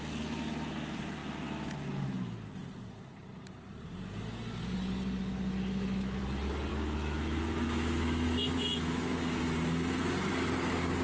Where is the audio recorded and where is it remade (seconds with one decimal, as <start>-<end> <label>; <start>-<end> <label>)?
0.0-5.2 recorded; 5.2-6.2 remade; 6.2-6.7 recorded; 6.7-9.4 remade; 9.4-11.0 recorded